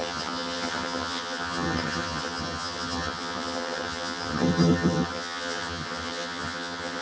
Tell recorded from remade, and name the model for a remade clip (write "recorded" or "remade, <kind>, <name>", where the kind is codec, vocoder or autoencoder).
remade, vocoder, HiFi-GAN